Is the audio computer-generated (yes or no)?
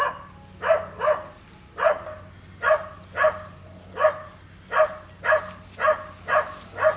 no